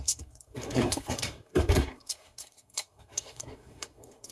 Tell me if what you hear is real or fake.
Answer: fake